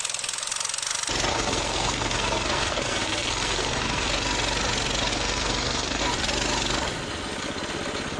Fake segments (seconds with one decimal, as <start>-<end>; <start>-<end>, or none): 1.3-4.1; 5.1-6.0